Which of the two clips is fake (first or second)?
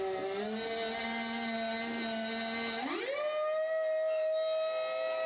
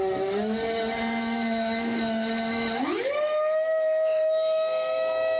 second